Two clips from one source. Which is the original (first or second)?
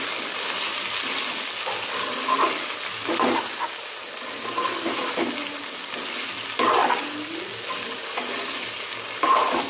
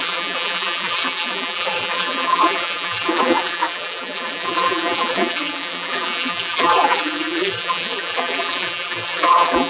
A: first